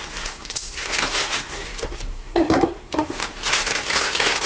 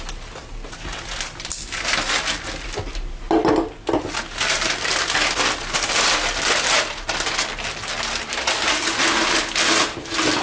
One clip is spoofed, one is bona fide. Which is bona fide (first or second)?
second